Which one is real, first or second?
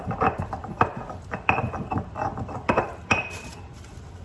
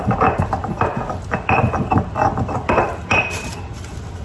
second